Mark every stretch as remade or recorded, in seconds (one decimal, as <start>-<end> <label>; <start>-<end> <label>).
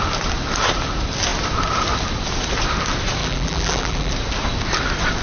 0.0-3.2 recorded; 3.2-4.1 remade; 4.1-5.2 recorded